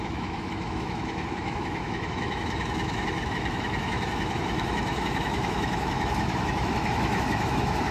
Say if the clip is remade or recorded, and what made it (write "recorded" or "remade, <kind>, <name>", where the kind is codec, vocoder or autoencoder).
remade, autoencoder, DAC-VAE